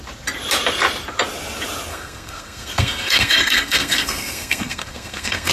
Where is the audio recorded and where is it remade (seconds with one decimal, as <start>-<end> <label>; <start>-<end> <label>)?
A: 0.0-1.9 recorded; 1.9-5.5 remade